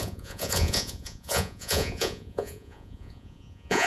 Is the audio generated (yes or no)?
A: yes